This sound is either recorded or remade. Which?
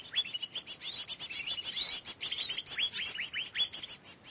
recorded